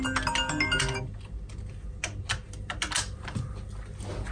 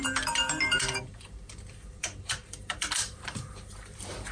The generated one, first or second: second